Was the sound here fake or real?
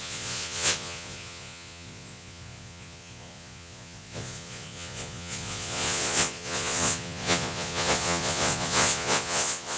fake